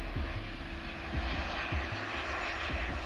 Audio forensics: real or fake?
real